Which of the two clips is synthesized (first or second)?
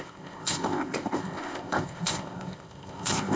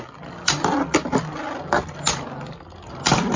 first